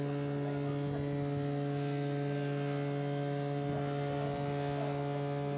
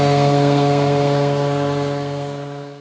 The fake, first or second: second